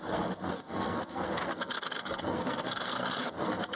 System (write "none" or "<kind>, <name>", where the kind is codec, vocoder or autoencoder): codec, SNAC